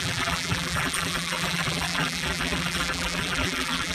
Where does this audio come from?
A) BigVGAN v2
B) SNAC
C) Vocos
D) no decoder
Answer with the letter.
A